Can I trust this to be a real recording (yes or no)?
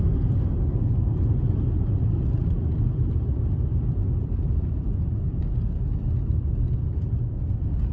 yes